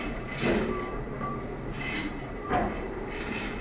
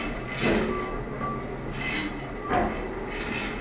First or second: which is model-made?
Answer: first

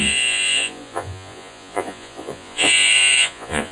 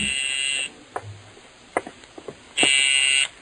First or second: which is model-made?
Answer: first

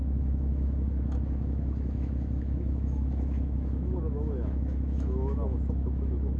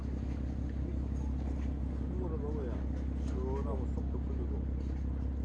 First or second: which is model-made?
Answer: first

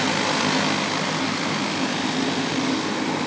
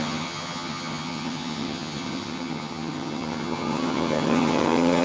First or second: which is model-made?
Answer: second